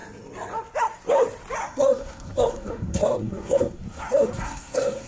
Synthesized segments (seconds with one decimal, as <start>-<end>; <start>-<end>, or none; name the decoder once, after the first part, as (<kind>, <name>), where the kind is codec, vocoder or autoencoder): 1.6-5.1 (codec, SNAC)